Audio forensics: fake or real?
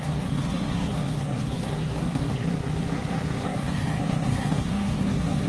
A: fake